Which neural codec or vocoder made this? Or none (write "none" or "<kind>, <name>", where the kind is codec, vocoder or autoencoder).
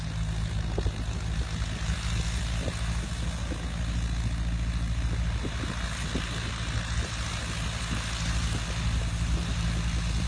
none